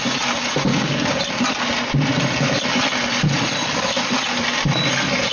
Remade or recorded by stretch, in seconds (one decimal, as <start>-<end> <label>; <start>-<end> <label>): 0.0-0.7 recorded; 0.7-1.2 remade; 1.2-5.3 recorded